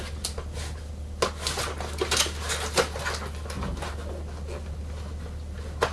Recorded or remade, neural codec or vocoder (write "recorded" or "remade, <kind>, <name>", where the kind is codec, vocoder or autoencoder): recorded